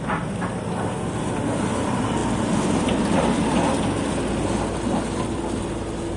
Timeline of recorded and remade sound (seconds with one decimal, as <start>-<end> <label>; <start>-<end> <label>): 0.0-6.2 recorded